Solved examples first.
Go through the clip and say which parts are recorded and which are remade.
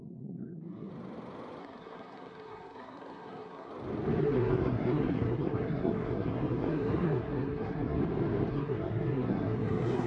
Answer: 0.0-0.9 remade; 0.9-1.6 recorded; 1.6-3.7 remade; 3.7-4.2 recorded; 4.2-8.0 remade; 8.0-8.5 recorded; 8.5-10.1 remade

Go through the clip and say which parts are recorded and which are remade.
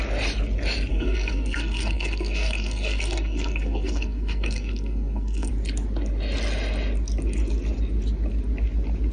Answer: 0.0-0.9 recorded; 0.9-5.5 remade; 5.5-9.1 recorded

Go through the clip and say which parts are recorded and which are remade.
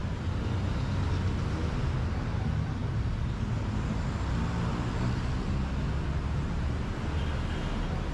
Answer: 0.0-8.1 recorded